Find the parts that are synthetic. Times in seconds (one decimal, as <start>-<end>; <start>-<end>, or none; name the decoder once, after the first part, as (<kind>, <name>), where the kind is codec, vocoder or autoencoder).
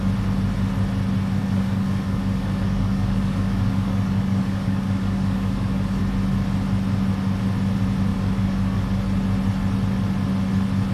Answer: 1.4-6.0 (codec, DAC); 8.1-8.8